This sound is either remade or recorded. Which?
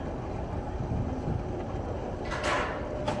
recorded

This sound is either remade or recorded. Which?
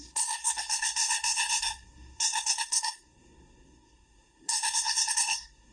remade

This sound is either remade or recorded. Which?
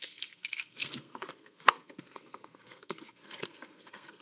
remade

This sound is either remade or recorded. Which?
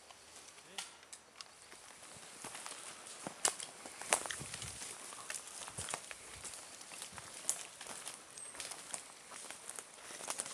recorded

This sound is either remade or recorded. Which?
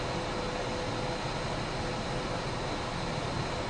recorded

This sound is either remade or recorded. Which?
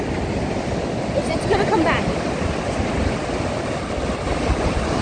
recorded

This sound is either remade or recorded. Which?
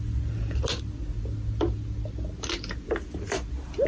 recorded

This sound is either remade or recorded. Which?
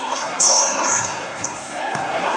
remade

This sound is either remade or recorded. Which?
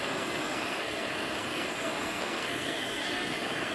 remade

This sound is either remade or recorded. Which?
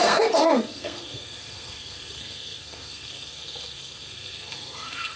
remade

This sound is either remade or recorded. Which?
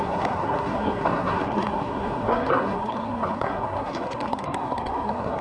remade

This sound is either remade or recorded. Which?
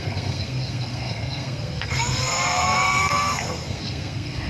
remade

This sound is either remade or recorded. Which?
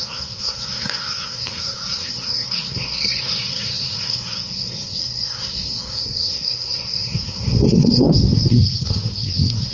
remade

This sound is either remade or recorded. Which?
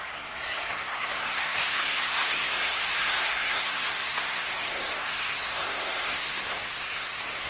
remade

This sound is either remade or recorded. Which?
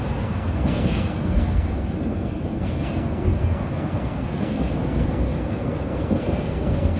remade